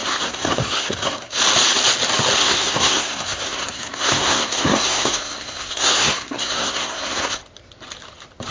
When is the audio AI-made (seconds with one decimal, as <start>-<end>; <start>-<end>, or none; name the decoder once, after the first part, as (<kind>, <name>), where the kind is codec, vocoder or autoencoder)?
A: 0.0-1.4 (codec, SNAC); 2.4-7.4